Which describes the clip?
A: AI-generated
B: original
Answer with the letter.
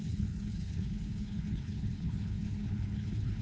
A